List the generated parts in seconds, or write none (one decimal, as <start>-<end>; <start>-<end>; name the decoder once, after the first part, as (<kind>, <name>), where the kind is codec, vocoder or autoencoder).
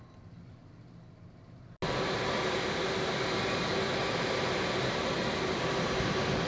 none